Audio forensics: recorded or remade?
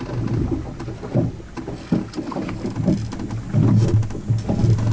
recorded